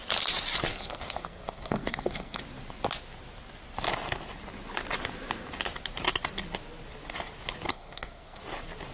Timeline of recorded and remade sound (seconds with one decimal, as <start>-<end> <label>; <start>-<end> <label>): 0.0-0.7 recorded; 0.7-2.4 remade; 2.4-7.7 recorded; 7.7-8.4 remade; 8.4-8.9 recorded